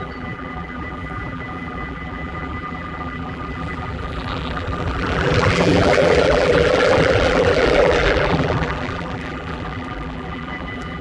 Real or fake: fake